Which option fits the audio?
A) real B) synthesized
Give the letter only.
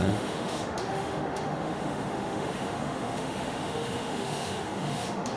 B